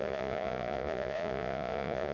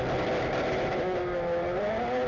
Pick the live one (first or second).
second